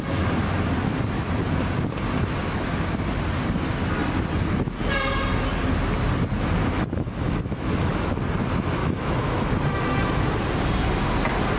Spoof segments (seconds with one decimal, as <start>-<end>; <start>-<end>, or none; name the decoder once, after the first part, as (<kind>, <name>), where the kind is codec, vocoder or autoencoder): 6.6-8.1 (autoencoder, DAC-VAE); 8.8-9.5